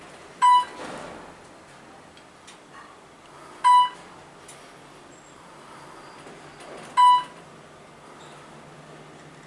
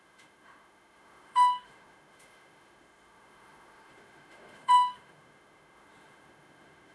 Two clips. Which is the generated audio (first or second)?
second